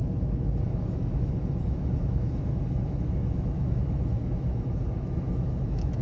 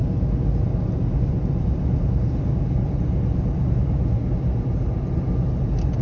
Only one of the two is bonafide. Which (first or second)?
second